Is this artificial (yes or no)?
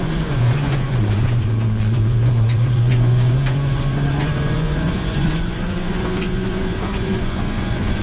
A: yes